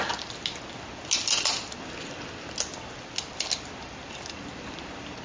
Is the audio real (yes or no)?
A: yes